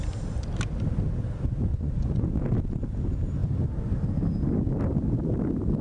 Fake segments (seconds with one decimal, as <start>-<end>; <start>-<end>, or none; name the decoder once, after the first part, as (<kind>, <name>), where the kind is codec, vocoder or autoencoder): 1.7-2.4 (vocoder, Vocos)